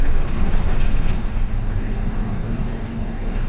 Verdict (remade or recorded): remade